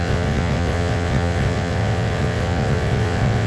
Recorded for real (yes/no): no